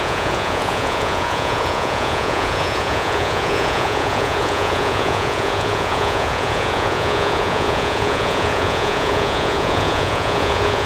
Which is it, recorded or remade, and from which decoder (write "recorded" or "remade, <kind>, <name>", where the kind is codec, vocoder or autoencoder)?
remade, vocoder, Vocos